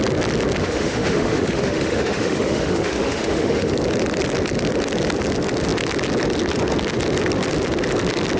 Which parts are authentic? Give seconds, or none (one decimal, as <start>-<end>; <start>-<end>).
0.0-0.6; 3.7-8.4